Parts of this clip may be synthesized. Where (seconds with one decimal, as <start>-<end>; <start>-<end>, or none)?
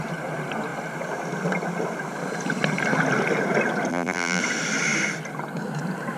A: 3.9-4.4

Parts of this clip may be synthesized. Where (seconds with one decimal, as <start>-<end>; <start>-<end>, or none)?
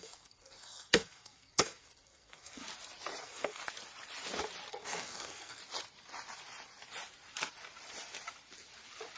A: 0.0-2.6; 3.2-3.6; 4.7-5.6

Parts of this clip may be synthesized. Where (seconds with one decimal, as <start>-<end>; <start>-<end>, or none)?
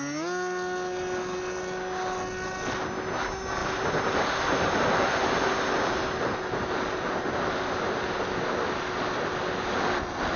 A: none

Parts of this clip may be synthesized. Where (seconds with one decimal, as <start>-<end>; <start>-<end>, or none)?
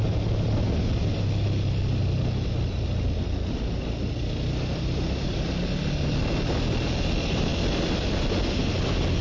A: none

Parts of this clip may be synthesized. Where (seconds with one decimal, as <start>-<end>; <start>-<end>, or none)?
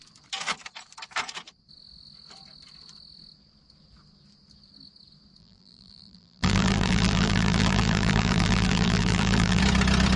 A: 5.4-9.6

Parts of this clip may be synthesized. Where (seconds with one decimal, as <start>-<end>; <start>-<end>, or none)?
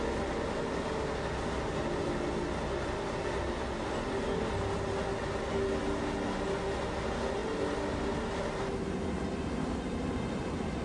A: none